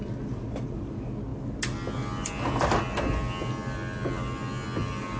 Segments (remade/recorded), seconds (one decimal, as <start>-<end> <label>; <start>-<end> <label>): 0.0-5.2 recorded